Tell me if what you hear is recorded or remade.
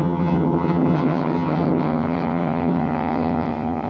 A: remade